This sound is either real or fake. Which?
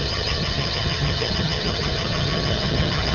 fake